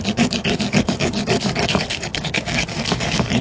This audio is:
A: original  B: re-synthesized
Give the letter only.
B